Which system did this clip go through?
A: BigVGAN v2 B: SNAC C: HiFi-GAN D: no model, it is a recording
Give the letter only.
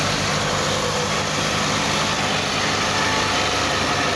D